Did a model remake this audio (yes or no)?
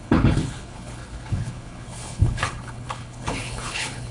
yes